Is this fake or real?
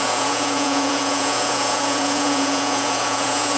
fake